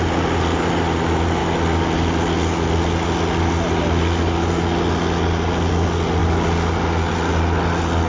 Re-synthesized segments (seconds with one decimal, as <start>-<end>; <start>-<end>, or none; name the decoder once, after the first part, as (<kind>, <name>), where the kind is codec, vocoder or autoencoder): none